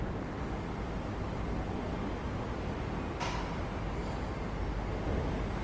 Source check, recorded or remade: recorded